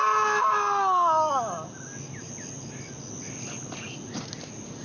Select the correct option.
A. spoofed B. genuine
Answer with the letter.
B